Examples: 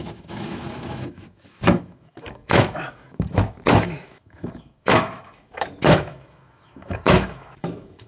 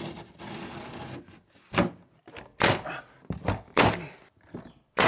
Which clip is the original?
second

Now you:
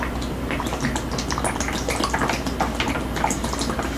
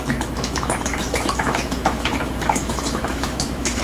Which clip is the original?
first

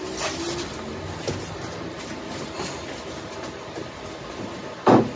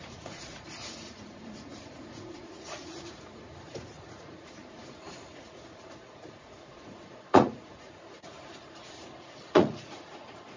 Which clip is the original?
first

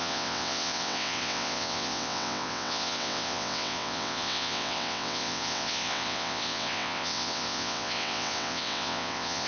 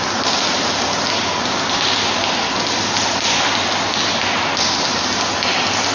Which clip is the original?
second